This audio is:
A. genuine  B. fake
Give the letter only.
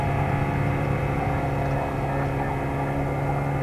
A